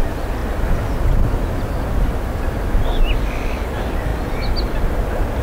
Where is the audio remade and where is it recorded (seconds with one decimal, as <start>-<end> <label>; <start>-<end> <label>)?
0.0-5.4 recorded